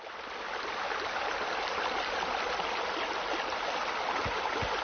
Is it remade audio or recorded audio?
recorded